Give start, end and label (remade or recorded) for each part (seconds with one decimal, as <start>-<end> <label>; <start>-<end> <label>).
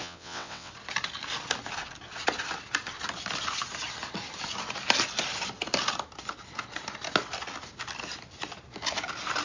0.0-0.7 remade; 0.7-9.4 recorded